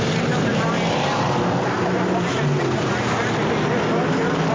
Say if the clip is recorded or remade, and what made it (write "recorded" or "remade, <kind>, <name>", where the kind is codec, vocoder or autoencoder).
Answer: remade, vocoder, BigVGAN v2